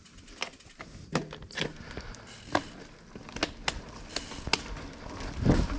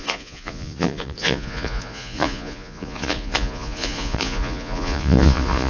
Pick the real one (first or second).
first